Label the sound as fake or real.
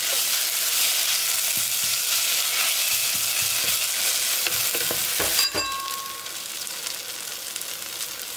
real